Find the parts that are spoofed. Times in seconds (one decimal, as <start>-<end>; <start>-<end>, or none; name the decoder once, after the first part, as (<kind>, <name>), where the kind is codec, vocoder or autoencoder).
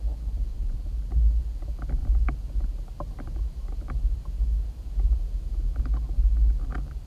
0.5-1.4 (vocoder, BigVGAN v2); 2.0-5.8